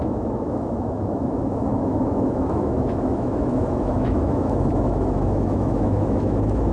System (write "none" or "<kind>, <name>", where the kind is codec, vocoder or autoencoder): autoencoder, DAC-VAE